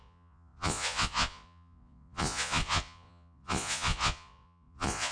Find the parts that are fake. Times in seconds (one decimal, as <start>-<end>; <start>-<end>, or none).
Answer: 0.0-5.1